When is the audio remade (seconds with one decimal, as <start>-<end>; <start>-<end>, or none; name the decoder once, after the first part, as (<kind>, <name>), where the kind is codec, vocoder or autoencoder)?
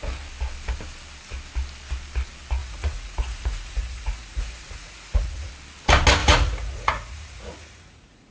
2.6-5.5 (vocoder, Vocos); 6.2-8.3